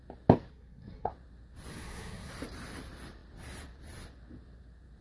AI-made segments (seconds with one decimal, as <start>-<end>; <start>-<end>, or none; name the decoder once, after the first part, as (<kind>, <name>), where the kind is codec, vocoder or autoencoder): 0.5-1.1 (codec, SNAC); 1.7-2.3